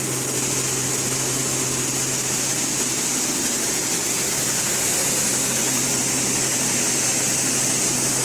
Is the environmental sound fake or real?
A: real